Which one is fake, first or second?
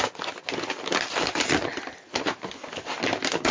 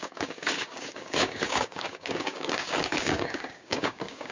second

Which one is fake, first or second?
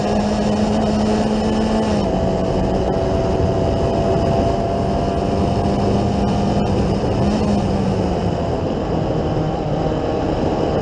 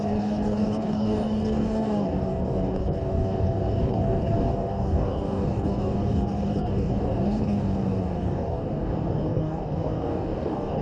second